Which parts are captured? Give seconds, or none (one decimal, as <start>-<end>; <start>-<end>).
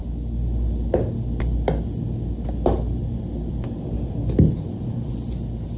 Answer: 0.0-5.8